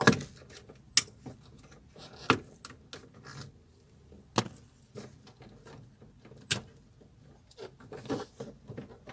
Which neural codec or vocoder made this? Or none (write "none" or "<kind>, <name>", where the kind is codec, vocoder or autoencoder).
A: none